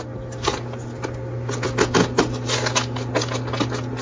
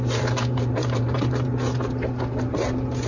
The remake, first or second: second